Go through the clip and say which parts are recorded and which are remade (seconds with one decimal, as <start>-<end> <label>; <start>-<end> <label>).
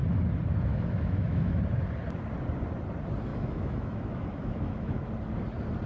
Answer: 0.0-0.7 recorded; 0.7-1.6 remade; 1.6-3.3 recorded; 3.3-5.1 remade; 5.1-5.9 recorded